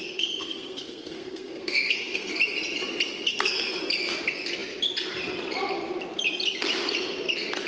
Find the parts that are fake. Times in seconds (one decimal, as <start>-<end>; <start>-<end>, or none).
0.0-2.3; 3.3-3.8